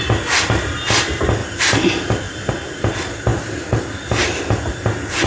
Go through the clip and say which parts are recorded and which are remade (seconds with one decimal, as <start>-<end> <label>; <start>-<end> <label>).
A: 0.0-5.3 recorded